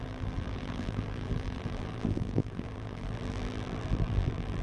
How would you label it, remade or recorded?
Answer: remade